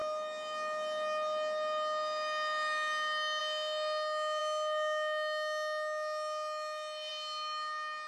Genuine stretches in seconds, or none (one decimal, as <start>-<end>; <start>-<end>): 0.0-8.1